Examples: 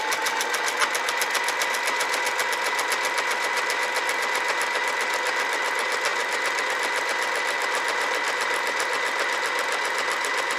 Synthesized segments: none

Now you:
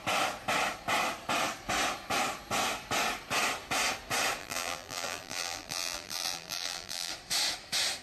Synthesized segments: 4.4-7.1 (vocoder, BigVGAN v2)

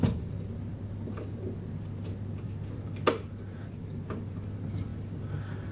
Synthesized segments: none